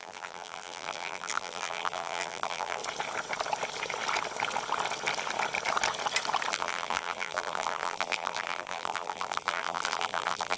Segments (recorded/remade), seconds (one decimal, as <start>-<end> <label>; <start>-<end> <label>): 0.0-2.8 remade; 2.8-6.5 recorded; 6.5-10.6 remade